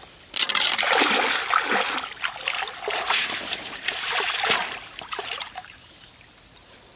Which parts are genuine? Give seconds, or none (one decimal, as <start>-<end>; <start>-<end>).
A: 0.0-2.9; 6.0-7.0

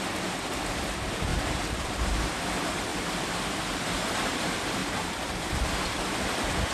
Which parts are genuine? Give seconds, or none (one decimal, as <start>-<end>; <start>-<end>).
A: 0.0-1.3; 1.9-2.9; 3.6-4.8; 5.5-6.7

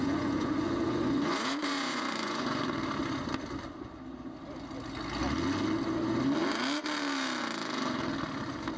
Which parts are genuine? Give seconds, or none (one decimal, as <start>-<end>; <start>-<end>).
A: 2.6-8.8

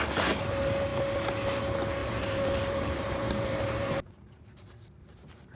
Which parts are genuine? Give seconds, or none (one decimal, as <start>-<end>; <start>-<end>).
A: 0.0-2.0

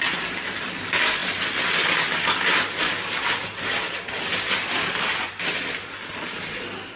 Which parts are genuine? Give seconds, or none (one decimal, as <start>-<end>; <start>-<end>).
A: 0.0-7.0

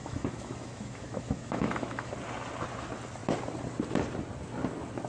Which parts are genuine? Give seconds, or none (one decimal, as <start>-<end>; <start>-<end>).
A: 2.1-5.1

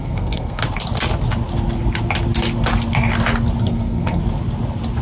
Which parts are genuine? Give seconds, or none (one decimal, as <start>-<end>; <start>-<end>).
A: 0.6-3.6; 4.2-5.0